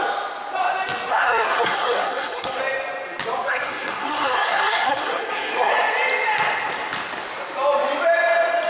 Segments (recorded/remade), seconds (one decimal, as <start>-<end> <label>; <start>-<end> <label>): 0.0-1.1 recorded; 1.1-2.6 remade; 2.6-3.5 recorded; 3.5-5.7 remade; 5.7-8.7 recorded